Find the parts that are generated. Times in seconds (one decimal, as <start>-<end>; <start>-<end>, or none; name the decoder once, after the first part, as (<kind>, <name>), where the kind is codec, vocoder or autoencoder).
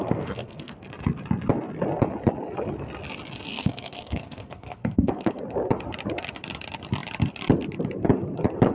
0.0-0.7 (codec, SNAC); 3.5-5.4